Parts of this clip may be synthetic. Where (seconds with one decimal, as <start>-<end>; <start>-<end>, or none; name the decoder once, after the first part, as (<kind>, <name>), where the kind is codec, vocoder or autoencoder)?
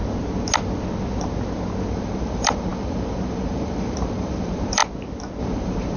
1.9-4.8 (vocoder, BigVGAN v2); 5.4-6.0